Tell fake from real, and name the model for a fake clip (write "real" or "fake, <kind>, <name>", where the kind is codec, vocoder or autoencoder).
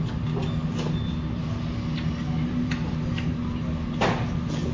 real